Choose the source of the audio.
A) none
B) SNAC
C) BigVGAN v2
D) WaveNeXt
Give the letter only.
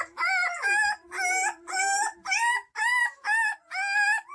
A